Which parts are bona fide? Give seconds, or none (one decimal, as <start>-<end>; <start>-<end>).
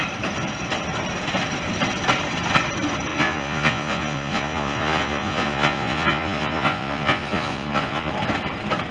0.0-3.1; 8.1-8.9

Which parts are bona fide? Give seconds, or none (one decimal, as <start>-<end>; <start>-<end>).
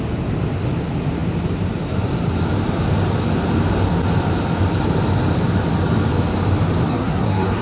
0.0-6.9